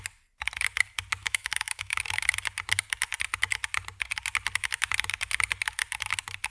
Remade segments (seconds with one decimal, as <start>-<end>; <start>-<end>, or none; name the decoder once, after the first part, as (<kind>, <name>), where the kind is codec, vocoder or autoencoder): 1.2-2.0 (autoencoder, DAC-VAE)